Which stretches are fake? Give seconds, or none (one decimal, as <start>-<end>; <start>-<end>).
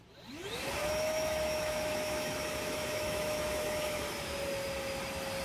0.8-4.0